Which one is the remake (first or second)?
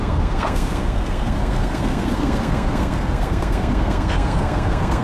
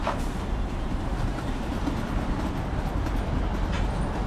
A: first